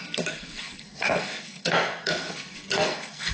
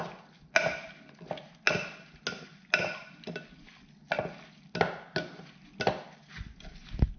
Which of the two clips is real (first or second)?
second